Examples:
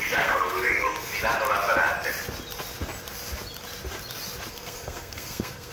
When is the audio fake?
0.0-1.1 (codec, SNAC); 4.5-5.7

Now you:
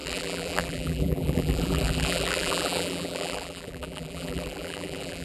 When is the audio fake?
0.0-5.2 (vocoder, BigVGAN v2)

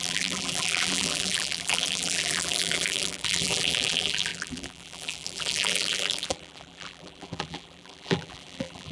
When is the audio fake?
0.0-8.9 (vocoder, BigVGAN v2)

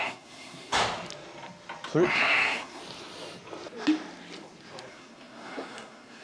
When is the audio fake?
0.0-0.8 (codec, SNAC); 2.1-2.8; 4.9-6.2

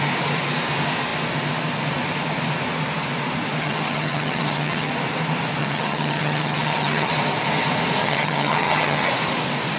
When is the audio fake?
3.6-4.9 (vocoder, HiFi-GAN); 5.6-7.1; 8.0-9.1

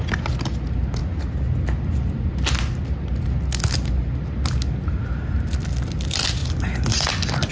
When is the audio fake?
none

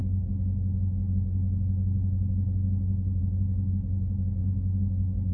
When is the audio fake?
none

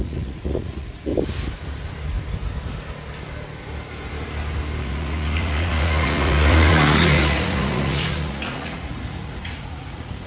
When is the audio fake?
0.0-1.1 (vocoder, Vocos); 4.8-10.3